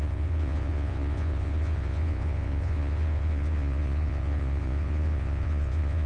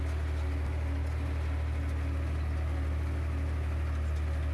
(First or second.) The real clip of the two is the second